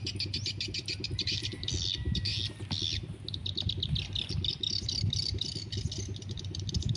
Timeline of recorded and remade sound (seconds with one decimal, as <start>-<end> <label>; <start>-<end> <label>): 0.0-7.0 recorded